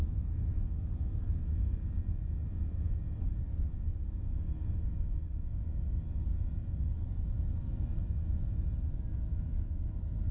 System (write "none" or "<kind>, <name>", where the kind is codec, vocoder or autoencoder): none